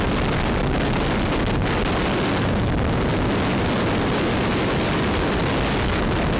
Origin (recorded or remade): recorded